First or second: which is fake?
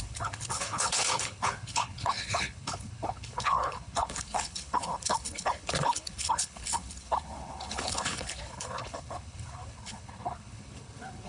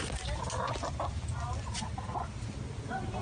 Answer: first